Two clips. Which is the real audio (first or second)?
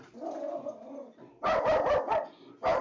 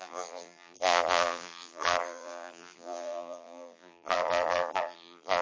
first